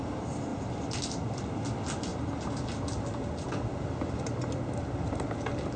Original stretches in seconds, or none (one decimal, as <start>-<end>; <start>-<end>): 0.0-0.5; 1.6-5.8